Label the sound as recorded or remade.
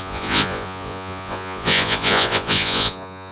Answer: remade